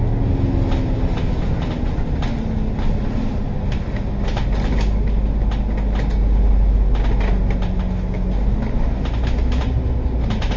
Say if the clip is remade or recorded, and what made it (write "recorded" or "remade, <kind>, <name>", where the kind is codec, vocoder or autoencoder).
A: recorded